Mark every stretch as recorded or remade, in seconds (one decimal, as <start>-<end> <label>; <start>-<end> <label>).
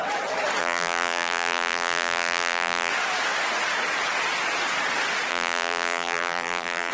0.0-0.6 recorded; 0.6-2.9 remade; 2.9-5.3 recorded; 5.3-6.9 remade